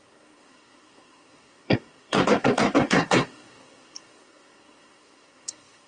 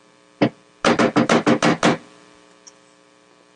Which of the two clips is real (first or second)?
second